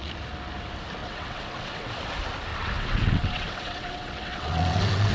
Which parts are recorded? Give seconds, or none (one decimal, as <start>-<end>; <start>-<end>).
0.0-1.0; 1.9-2.5